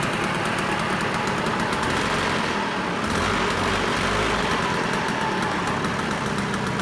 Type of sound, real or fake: real